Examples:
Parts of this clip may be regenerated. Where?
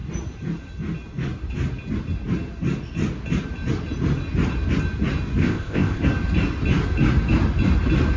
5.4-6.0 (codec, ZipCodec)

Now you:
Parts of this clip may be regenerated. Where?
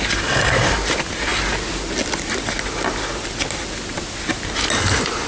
none